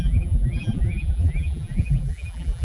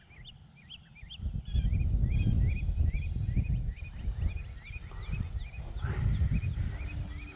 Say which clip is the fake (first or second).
first